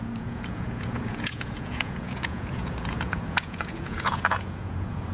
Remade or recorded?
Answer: remade